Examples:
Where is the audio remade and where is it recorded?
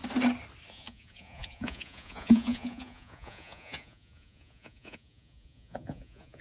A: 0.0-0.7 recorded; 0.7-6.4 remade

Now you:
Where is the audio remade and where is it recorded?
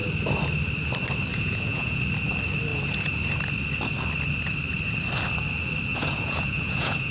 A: 0.0-1.3 recorded; 1.3-2.0 remade; 2.0-5.9 recorded; 5.9-7.1 remade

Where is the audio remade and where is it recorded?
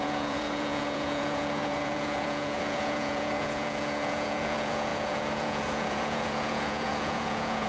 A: 0.0-7.7 remade